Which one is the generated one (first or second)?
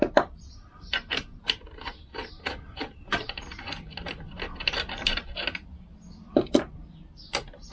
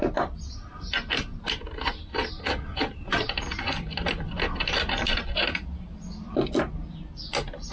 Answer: first